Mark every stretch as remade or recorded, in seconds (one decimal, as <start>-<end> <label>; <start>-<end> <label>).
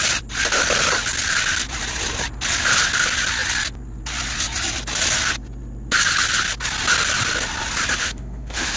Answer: 0.0-8.0 recorded; 8.0-8.8 remade